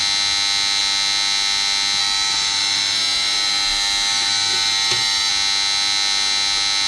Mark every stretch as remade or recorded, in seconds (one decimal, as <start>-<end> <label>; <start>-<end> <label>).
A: 0.0-2.0 recorded; 2.0-5.3 remade; 5.3-6.9 recorded